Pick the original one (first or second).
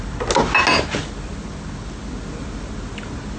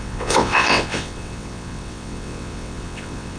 first